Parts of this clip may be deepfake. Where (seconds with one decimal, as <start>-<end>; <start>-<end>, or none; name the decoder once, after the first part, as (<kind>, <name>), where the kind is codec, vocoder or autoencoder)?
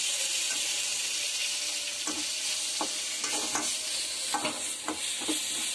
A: none